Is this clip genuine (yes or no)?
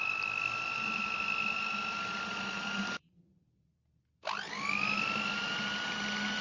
yes